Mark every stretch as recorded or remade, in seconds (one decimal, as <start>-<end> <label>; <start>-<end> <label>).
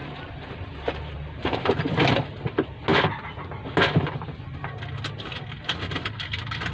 0.0-1.8 remade; 1.8-6.7 recorded